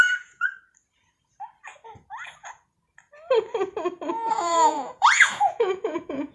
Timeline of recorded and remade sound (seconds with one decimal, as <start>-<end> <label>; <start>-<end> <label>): 0.0-0.5 remade; 0.5-4.3 recorded; 4.3-6.3 remade

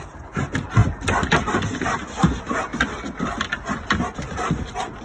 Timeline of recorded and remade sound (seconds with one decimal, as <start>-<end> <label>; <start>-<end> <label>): 0.0-5.0 recorded